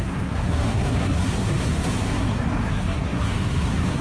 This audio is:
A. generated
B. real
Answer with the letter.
A